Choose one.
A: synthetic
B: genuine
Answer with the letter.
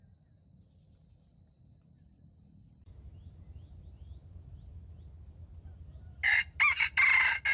B